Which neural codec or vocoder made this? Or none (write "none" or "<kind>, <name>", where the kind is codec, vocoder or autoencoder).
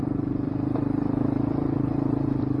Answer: vocoder, BigVGAN v2